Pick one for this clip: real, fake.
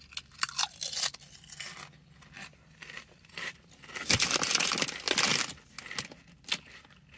real